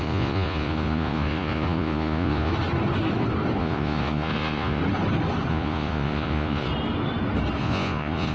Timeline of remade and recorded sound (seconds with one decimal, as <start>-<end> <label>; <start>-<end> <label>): 0.0-2.5 remade; 2.5-3.6 recorded; 3.6-4.8 remade; 4.8-5.5 recorded; 5.5-6.7 remade; 6.7-7.6 recorded; 7.6-8.3 remade